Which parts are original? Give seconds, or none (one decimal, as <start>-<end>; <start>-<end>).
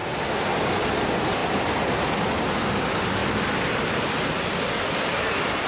0.7-1.4; 2.6-3.2